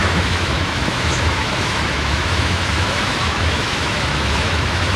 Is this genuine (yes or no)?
no